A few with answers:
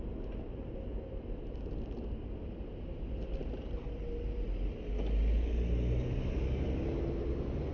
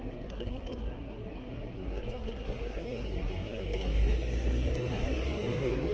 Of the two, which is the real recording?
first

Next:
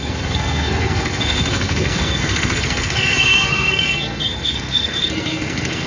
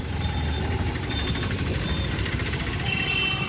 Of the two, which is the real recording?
second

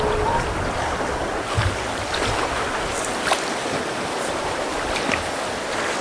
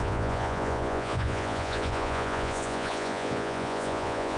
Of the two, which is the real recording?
first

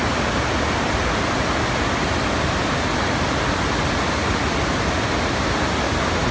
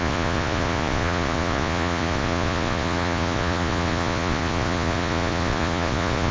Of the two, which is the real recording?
first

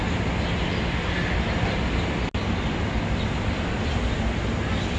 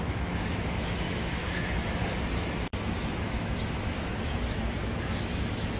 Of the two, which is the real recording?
first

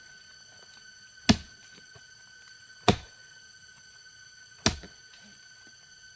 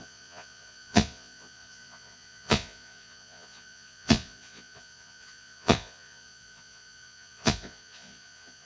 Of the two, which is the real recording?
first